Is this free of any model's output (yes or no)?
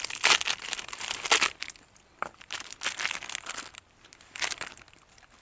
yes